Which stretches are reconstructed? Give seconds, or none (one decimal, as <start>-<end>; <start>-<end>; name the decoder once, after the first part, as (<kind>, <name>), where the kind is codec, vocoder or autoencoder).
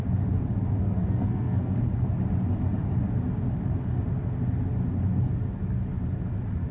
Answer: 0.8-1.8 (codec, SNAC)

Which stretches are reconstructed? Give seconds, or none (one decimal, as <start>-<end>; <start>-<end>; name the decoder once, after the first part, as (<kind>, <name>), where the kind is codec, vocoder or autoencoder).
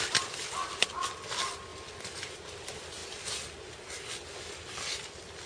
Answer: none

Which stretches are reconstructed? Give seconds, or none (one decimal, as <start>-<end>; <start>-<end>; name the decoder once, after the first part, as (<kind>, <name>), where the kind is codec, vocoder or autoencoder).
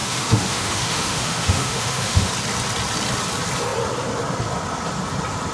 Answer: 0.0-2.3 (autoencoder, DAC-VAE)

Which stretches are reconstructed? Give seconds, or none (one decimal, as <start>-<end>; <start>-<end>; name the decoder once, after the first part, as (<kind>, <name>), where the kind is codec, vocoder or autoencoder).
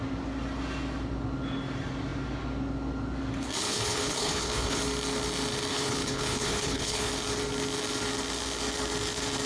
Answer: 3.6-4.8 (codec, HILCodec); 5.7-7.1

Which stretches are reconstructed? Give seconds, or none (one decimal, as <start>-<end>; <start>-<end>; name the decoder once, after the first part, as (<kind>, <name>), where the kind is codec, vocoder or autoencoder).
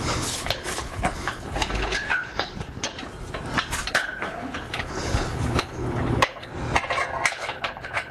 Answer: 0.0-2.9 (codec, HILCodec); 3.9-6.5; 7.3-8.1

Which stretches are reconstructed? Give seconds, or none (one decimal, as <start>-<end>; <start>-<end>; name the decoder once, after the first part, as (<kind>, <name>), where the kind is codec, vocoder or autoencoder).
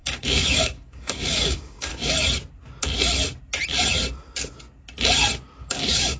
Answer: 0.0-1.9 (codec, DAC); 5.6-6.2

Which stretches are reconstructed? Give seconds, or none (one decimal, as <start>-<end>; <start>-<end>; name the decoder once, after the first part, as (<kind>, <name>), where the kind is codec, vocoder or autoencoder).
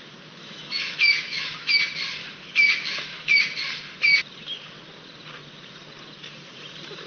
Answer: 0.4-1.8 (autoencoder, DAC-VAE); 2.2-3.4